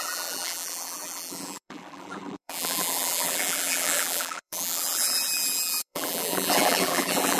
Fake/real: fake